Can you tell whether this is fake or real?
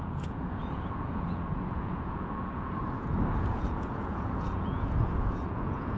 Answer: fake